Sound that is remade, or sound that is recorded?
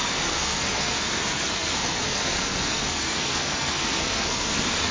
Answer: remade